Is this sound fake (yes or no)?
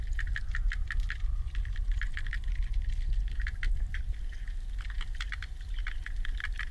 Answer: no